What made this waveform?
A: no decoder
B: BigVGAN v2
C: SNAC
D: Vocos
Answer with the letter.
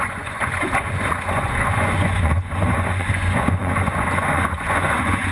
D